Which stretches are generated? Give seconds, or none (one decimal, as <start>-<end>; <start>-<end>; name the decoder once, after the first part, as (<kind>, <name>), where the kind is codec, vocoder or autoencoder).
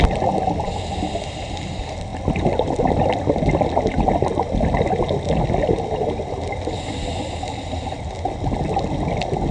none